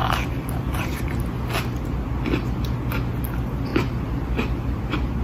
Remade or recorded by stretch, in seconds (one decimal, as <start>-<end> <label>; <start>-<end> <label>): 0.0-1.1 remade; 1.1-3.7 recorded; 3.7-4.8 remade; 4.8-5.2 recorded